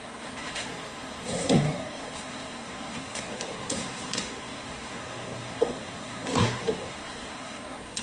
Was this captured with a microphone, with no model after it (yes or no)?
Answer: no